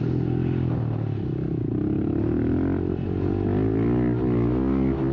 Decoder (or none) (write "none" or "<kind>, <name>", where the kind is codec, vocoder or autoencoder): none